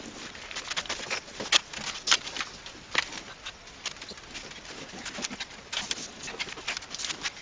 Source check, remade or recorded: recorded